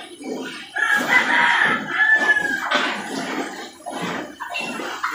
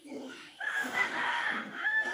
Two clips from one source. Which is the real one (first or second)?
first